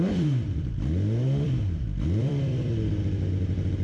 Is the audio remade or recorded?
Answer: remade